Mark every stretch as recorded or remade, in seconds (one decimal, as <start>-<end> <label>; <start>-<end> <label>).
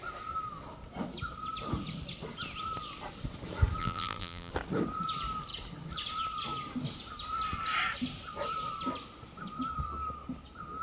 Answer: 0.0-3.8 recorded; 3.8-4.5 remade; 4.5-10.8 recorded